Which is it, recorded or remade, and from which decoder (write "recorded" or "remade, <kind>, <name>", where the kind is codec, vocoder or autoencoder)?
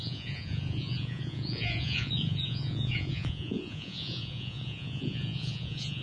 remade, vocoder, Vocos